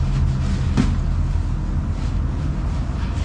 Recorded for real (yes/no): yes